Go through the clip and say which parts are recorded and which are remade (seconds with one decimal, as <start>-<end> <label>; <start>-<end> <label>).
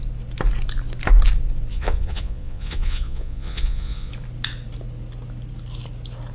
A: 0.0-1.7 recorded; 1.7-4.1 remade; 4.1-6.3 recorded